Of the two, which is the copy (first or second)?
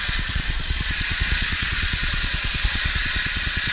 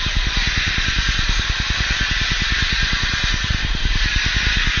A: first